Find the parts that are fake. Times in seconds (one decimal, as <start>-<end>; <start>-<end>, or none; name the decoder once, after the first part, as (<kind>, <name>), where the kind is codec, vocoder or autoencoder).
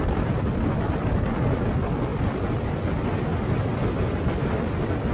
none